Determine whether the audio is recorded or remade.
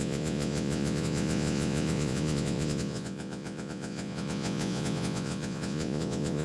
remade